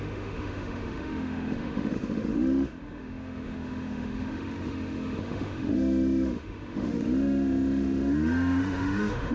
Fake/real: fake